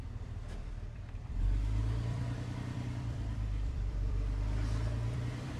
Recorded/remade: remade